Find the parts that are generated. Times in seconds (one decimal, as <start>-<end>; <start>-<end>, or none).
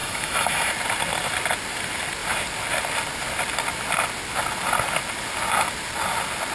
0.0-0.7